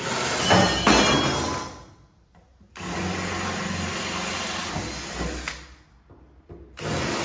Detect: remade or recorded recorded